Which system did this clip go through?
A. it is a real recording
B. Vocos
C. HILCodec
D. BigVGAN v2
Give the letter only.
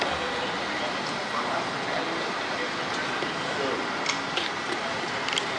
A